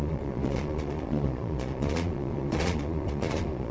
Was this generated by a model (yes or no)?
yes